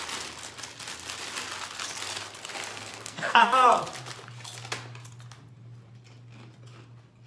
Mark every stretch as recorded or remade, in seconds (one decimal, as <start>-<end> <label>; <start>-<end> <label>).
0.0-2.7 recorded; 2.7-3.8 remade; 3.8-7.3 recorded